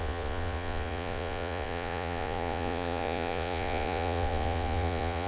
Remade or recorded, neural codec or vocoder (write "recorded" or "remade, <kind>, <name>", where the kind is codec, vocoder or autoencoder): remade, vocoder, Vocos